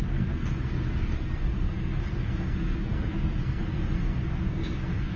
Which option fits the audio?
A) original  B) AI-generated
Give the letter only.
B